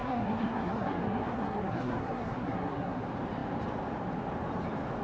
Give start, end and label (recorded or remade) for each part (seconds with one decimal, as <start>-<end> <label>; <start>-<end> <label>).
0.0-3.0 remade; 3.0-5.0 recorded